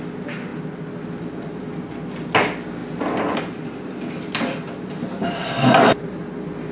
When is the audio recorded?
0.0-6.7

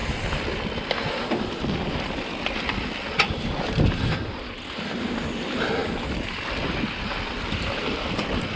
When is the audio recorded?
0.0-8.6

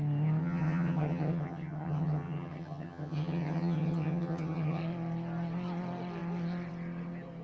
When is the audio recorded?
0.0-0.4; 4.8-7.4

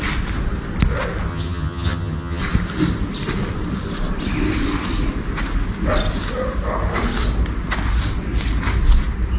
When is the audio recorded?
0.0-1.3; 2.4-9.4

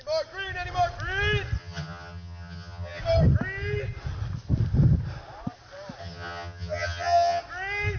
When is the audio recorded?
0.0-1.6; 3.0-6.0; 7.4-8.0

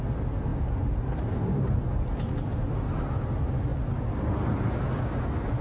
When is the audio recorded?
0.0-5.6

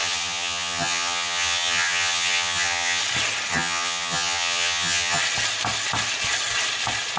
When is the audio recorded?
3.0-3.5; 5.2-7.2